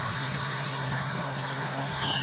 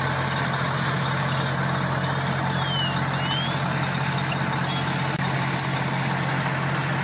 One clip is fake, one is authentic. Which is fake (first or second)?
first